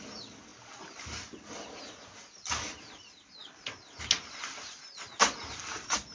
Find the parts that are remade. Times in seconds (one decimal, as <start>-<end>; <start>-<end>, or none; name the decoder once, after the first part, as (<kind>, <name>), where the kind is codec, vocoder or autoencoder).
none